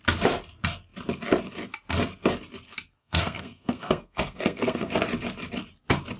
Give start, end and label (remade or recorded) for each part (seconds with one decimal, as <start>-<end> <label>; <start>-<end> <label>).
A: 0.0-3.0 recorded; 3.0-4.9 remade; 4.9-6.2 recorded